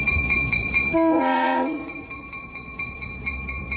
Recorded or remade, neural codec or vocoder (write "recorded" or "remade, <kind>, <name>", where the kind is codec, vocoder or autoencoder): remade, vocoder, Vocos